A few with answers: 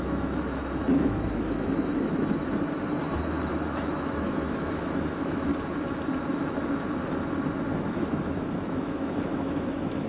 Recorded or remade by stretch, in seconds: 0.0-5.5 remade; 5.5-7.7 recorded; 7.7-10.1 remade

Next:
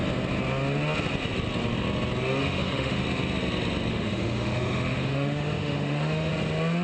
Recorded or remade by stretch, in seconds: 0.0-2.4 recorded; 2.4-3.0 remade; 3.0-3.9 recorded; 3.9-6.3 remade; 6.3-6.8 recorded

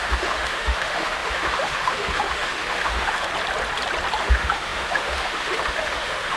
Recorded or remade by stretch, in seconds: 0.0-3.3 remade; 3.3-4.2 recorded; 4.2-6.4 remade

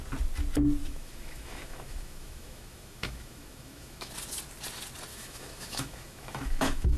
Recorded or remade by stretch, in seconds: 0.0-0.8 recorded; 0.8-4.1 remade; 4.1-5.1 recorded; 5.1-7.0 remade